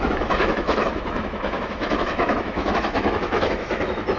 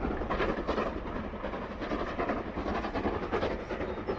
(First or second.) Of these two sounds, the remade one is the first